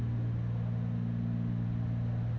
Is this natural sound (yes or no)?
yes